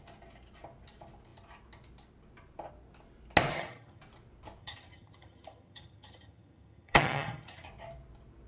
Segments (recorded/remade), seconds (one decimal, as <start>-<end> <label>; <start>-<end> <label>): 0.0-3.5 recorded; 3.5-4.0 remade; 4.0-4.6 recorded; 4.6-7.7 remade; 7.7-8.5 recorded